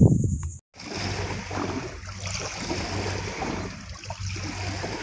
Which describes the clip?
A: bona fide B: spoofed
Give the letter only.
A